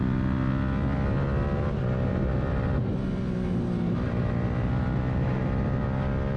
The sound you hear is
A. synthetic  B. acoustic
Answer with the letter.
B